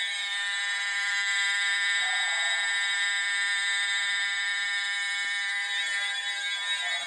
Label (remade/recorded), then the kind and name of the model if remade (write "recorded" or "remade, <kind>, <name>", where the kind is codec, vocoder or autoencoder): remade, vocoder, BigVGAN v2